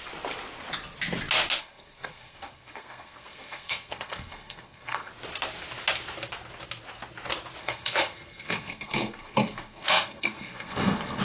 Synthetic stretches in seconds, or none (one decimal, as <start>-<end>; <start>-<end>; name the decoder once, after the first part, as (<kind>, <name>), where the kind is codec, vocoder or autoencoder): 1.6-5.1 (codec, SNAC); 7.6-11.2